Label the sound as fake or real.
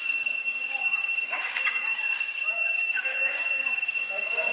fake